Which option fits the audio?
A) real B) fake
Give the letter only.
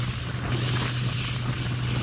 A